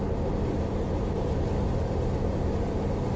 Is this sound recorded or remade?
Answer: recorded